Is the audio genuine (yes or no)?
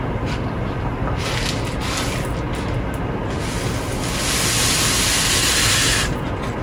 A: yes